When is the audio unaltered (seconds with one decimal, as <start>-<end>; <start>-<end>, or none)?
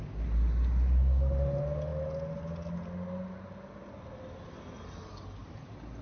0.0-6.0